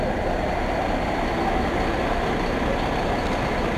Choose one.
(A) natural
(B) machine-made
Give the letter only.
A